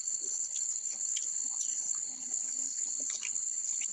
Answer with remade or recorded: remade